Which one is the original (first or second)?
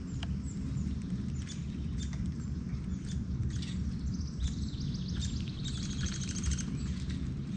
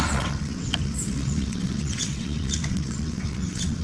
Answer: first